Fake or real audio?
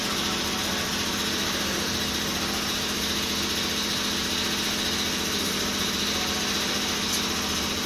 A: real